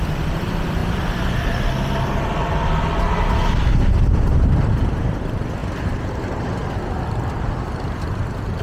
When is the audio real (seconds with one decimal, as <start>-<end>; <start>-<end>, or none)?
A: 0.8-3.9